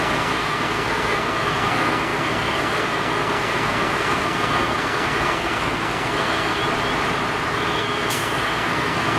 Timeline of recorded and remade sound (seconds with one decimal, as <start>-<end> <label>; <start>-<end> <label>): 0.0-6.6 remade; 6.6-7.5 recorded; 7.5-9.2 remade